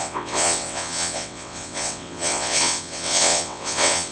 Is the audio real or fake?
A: fake